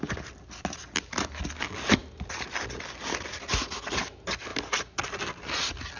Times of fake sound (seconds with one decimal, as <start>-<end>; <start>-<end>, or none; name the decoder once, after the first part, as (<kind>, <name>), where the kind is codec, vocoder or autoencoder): none